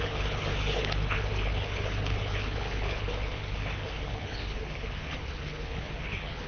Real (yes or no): no